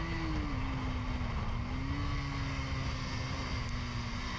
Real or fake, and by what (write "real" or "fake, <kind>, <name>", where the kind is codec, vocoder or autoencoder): real